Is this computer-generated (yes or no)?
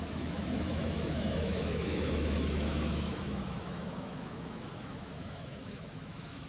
yes